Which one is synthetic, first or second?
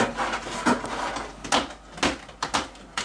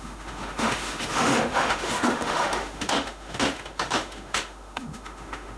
second